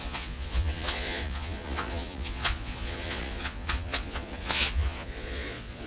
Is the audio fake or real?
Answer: fake